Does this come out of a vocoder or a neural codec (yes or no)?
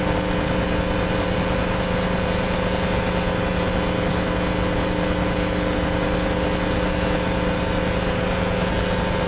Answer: no